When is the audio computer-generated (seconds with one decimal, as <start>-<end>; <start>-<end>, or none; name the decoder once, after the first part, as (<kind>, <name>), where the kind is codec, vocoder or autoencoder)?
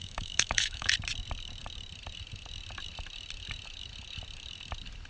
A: 0.0-0.9 (autoencoder, DAC-VAE)